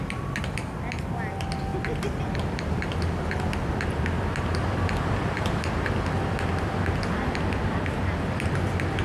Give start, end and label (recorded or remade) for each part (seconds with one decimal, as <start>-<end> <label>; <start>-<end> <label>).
0.0-9.0 recorded